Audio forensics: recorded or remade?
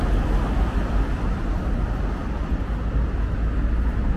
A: recorded